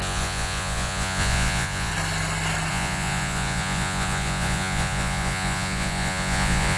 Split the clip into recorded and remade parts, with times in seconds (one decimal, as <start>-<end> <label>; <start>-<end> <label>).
0.0-1.9 remade; 1.9-2.7 recorded; 2.7-6.8 remade